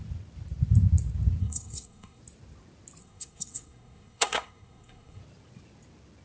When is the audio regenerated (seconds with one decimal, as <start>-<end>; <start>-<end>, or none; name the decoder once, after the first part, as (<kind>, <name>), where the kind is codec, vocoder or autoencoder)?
1.4-2.2 (codec, SNAC); 3.0-5.2